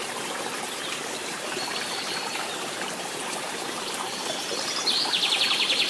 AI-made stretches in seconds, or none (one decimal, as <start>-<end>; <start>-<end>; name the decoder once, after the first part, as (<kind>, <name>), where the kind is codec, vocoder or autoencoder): 1.2-4.7 (vocoder, BigVGAN v2)